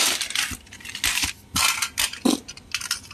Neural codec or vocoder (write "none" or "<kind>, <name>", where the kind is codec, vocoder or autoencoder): none